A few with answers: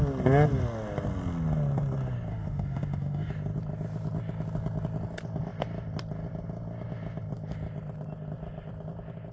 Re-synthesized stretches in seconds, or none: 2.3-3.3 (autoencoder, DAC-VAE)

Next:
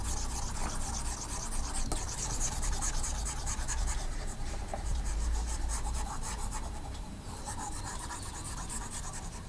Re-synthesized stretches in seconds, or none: 2.0-9.5 (vocoder, BigVGAN v2)